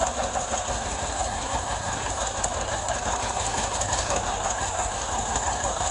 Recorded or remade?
remade